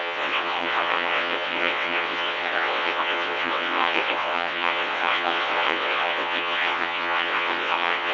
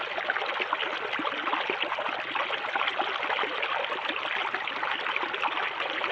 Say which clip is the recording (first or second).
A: second